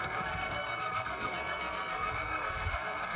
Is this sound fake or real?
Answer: fake